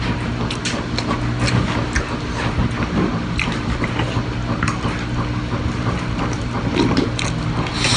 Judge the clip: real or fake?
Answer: real